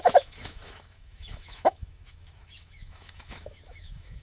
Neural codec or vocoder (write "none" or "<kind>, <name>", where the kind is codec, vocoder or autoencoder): autoencoder, DAC-VAE